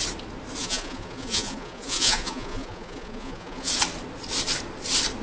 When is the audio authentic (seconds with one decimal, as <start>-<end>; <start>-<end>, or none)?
0.0-0.6; 3.7-5.2